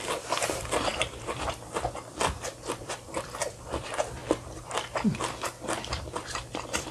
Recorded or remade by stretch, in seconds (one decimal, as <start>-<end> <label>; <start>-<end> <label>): 0.0-4.2 remade; 4.2-6.3 recorded; 6.3-6.9 remade

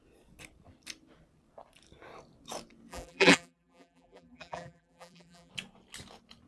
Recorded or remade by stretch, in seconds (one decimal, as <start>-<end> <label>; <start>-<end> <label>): 0.0-2.9 recorded; 2.9-5.5 remade; 5.5-6.5 recorded

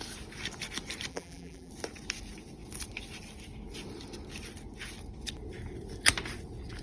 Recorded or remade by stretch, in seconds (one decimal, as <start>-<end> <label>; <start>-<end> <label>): 0.0-1.1 recorded; 1.1-1.7 remade; 1.7-6.8 recorded